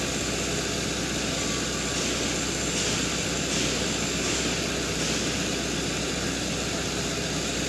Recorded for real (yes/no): yes